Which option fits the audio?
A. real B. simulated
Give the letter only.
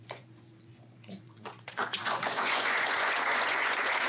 B